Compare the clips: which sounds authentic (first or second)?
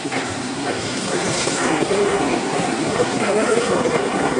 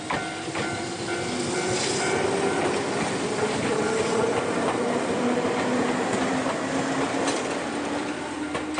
second